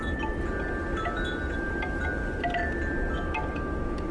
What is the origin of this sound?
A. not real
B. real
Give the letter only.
B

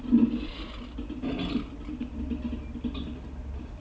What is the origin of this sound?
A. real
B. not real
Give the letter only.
A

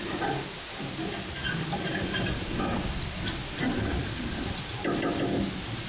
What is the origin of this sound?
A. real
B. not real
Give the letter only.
A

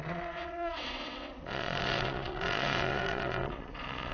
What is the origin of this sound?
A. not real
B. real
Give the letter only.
A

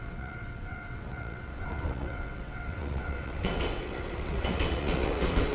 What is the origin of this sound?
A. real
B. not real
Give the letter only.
B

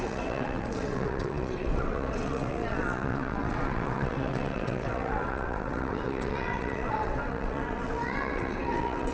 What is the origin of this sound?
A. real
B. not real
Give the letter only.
B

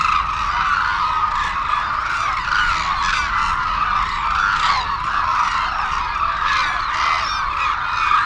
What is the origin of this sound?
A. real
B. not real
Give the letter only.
A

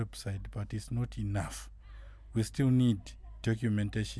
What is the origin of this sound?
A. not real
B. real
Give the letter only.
B